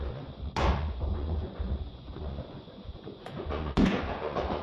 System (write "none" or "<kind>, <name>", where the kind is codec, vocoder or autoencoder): vocoder, Vocos